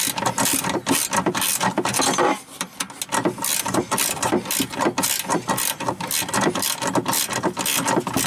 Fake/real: real